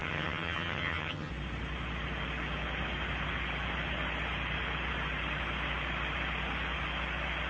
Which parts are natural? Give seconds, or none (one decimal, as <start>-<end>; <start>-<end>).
1.3-7.5